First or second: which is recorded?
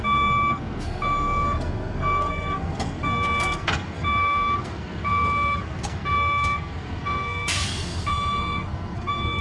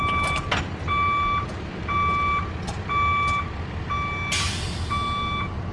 second